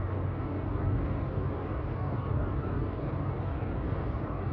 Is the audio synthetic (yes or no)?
yes